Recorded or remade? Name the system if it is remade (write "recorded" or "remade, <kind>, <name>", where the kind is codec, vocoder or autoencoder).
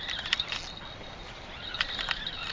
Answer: recorded